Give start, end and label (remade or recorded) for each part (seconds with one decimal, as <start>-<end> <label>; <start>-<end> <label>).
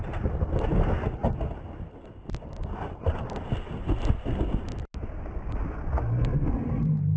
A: 0.0-7.2 recorded